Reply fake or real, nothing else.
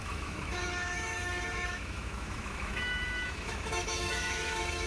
fake